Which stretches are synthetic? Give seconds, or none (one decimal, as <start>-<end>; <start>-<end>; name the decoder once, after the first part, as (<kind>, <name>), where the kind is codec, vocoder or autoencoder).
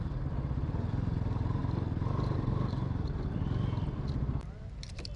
0.0-1.6 (vocoder, BigVGAN v2); 2.1-5.2